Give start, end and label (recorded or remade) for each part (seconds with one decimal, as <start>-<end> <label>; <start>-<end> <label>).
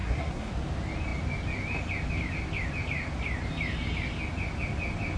0.0-0.5 remade; 0.5-5.2 recorded